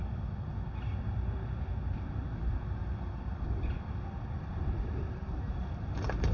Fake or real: real